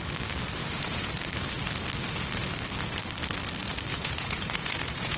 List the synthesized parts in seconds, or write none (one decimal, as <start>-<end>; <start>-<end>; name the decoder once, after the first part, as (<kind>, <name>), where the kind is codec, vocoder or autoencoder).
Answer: 0.6-1.1 (vocoder, Vocos); 3.9-5.2